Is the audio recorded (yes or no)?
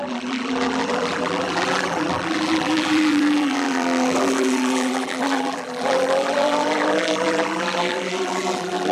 no